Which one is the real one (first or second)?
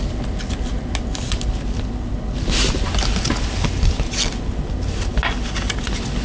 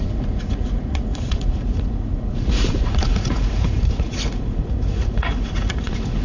first